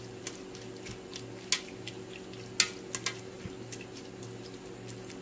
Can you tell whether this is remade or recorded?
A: recorded